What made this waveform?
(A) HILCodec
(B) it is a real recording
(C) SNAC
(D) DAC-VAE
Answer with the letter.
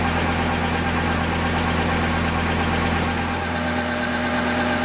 B